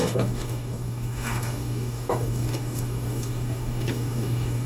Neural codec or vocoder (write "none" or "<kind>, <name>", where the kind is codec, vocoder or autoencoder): codec, DAC